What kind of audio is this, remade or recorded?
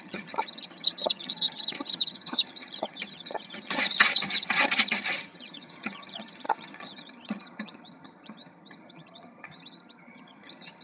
remade